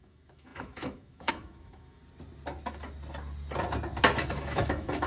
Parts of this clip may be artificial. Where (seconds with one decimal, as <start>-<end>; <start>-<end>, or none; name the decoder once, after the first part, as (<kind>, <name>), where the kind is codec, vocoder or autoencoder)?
0.0-2.0 (autoencoder, DAC-VAE); 4.2-5.1